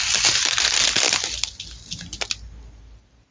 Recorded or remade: recorded